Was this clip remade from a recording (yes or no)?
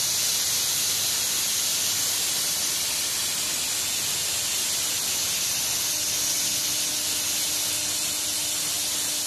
no